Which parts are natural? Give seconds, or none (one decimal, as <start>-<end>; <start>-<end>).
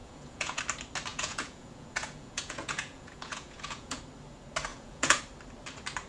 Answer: 0.6-1.1; 4.0-4.7; 5.2-6.1